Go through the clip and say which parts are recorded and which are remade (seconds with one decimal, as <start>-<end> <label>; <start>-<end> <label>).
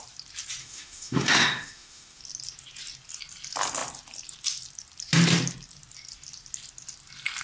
0.0-0.6 recorded; 0.6-2.2 remade; 2.2-7.4 recorded